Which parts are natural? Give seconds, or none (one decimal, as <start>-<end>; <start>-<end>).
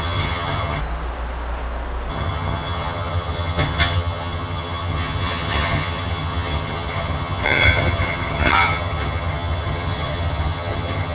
0.8-2.1